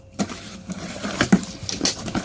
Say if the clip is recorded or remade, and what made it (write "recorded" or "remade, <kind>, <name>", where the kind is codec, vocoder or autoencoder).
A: recorded